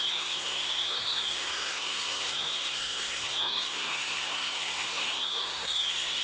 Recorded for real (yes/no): no